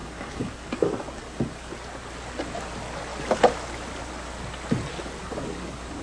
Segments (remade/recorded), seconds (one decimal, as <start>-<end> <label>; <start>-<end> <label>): 0.0-1.7 remade; 1.7-5.2 recorded; 5.2-6.0 remade